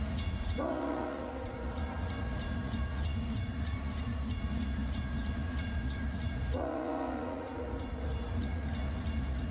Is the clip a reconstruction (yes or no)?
yes